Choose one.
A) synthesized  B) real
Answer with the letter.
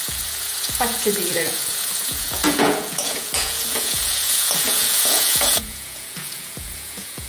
A